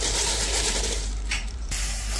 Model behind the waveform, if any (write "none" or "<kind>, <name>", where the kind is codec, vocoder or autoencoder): vocoder, BigVGAN v2